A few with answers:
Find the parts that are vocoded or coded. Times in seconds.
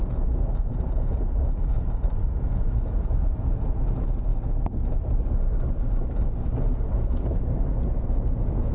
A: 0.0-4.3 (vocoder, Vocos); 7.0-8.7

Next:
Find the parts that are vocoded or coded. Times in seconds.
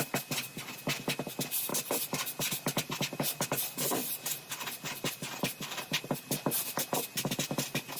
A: 1.7-3.0 (vocoder, BigVGAN v2); 4.0-6.4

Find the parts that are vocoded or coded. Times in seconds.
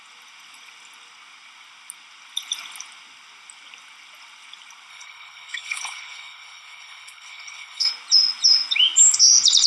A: 4.9-7.9 (codec, HILCodec)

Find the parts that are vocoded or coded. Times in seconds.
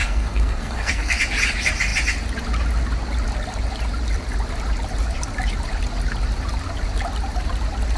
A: 0.0-1.2 (codec, SNAC)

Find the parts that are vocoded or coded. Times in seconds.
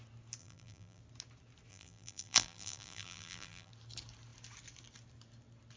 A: 0.4-1.0 (vocoder, BigVGAN v2); 1.7-3.7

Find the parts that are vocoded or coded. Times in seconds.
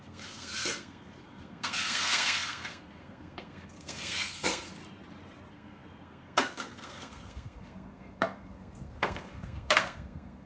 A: 0.0-4.8 (codec, SNAC); 5.5-10.5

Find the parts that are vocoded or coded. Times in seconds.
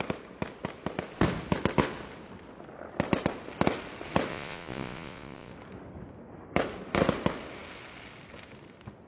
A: 4.3-5.5 (vocoder, Vocos)